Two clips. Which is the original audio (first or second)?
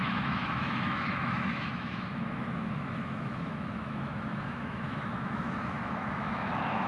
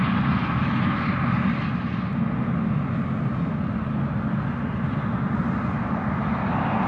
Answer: second